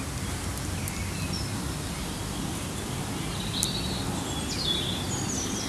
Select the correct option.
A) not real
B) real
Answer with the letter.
B